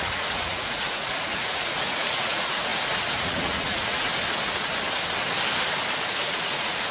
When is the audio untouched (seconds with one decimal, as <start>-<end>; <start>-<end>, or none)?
4.1-6.2